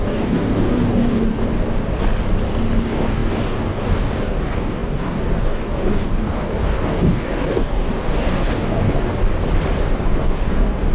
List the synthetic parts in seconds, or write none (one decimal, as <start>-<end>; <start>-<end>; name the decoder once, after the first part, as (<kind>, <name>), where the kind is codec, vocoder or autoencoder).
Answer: 0.0-1.4 (codec, DAC); 2.8-9.2; 9.8-10.9